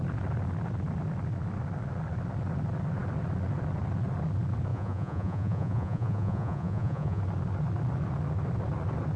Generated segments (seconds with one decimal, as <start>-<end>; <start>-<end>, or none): 4.7-7.2